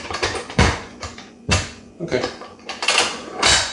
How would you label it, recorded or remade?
remade